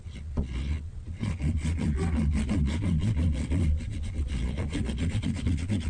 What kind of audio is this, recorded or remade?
remade